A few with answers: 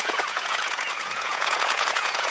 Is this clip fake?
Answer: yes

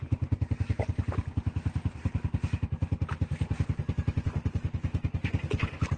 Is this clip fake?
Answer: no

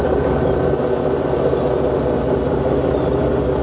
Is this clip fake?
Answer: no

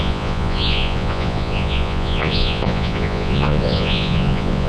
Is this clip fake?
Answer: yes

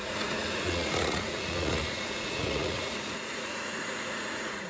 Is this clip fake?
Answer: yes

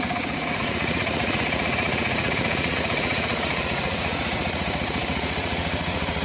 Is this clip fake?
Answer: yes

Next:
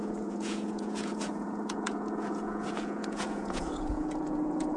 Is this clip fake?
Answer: yes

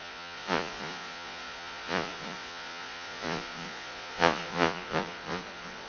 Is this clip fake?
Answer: yes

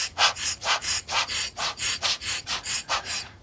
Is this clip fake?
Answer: yes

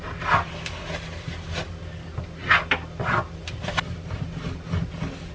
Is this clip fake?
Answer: no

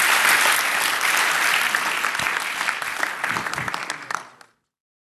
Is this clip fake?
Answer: no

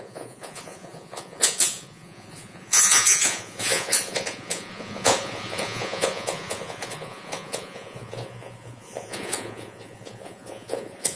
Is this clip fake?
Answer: yes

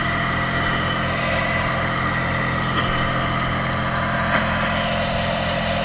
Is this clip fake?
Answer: no